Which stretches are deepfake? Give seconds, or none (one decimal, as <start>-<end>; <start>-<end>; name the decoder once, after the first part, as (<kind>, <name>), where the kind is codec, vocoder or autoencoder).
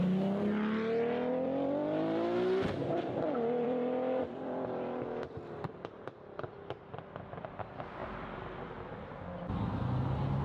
1.3-6.0 (vocoder, BigVGAN v2); 8.0-9.1